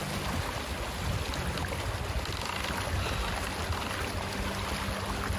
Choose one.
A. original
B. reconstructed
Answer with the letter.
A